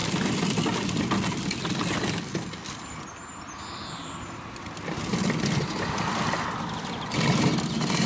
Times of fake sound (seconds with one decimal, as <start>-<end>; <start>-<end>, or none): none